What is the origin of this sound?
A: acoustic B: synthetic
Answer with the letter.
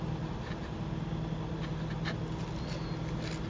A